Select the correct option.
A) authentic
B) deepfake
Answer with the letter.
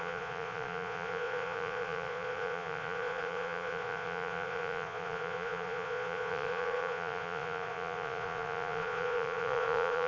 B